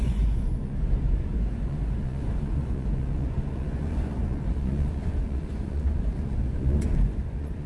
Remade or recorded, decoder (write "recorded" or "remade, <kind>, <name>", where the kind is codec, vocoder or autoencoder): remade, vocoder, Vocos